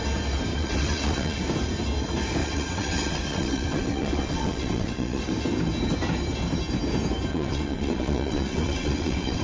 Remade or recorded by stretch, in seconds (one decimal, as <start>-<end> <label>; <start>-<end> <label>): 0.0-0.5 recorded; 0.5-1.4 remade; 1.4-2.4 recorded; 2.4-5.3 remade; 5.3-7.3 recorded; 7.3-9.4 remade